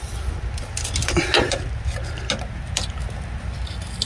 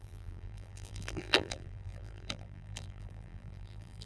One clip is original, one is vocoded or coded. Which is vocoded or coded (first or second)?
second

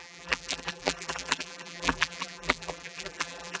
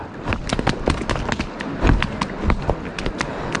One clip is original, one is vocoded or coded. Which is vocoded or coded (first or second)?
first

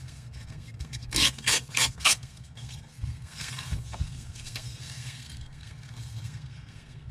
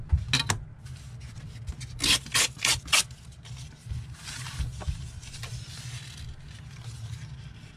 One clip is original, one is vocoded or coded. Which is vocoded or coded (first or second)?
first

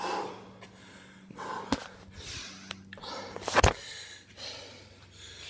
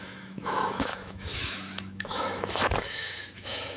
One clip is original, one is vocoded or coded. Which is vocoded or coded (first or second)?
second